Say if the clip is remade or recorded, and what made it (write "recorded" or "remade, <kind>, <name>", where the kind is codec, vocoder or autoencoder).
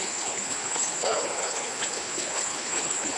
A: remade, codec, HILCodec